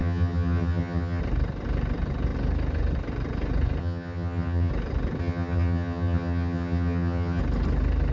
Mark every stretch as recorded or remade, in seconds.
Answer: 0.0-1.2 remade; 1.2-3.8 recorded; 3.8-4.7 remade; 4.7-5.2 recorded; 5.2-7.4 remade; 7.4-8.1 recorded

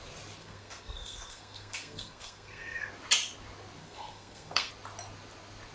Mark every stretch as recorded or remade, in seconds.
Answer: 0.0-0.4 recorded; 0.4-2.9 remade; 2.9-3.8 recorded; 3.8-4.7 remade; 4.7-5.7 recorded

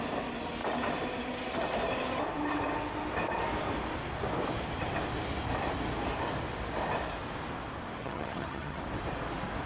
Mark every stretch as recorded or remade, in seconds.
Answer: 0.0-8.0 recorded; 8.0-8.8 remade; 8.8-9.7 recorded